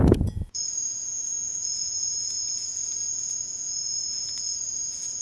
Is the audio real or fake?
fake